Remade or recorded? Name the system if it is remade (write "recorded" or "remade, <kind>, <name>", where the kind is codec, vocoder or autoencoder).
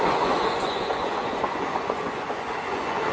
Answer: remade, vocoder, Vocos